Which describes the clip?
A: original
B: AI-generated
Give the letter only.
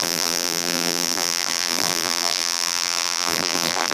B